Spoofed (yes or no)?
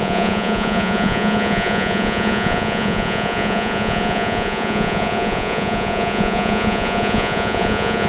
yes